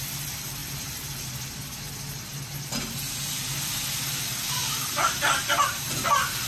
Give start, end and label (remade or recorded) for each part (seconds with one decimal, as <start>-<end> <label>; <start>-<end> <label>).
0.0-6.5 recorded